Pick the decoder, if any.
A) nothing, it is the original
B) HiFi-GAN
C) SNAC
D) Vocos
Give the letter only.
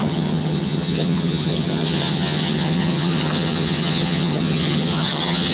B